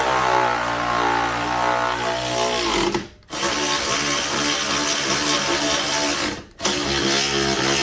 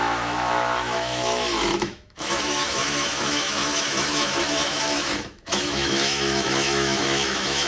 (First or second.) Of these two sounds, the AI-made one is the second